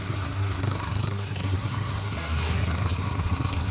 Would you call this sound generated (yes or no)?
yes